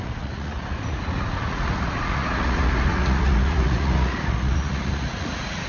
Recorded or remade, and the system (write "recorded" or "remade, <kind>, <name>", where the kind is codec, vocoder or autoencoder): remade, vocoder, Vocos